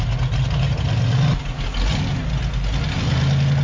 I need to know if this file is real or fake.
real